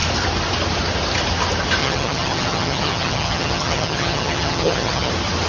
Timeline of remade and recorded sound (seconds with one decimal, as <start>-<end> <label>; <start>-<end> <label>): 0.0-1.8 recorded; 1.8-5.1 remade; 5.1-5.5 recorded